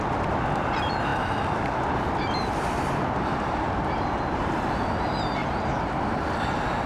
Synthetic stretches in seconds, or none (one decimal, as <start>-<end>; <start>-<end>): none

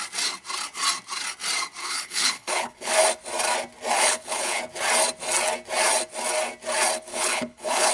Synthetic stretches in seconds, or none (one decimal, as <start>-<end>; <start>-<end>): 1.8-2.9; 3.9-4.6; 7.1-7.9

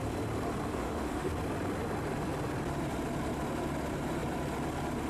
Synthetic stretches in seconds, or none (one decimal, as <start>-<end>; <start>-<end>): 0.7-1.3

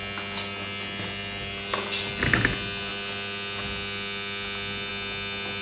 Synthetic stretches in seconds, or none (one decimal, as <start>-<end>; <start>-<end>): none

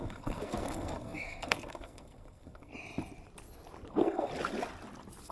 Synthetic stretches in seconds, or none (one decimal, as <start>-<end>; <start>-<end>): 0.0-2.7; 3.9-4.3

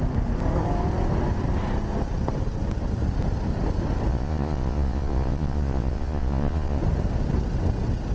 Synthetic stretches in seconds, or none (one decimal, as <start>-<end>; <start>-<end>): 4.1-6.8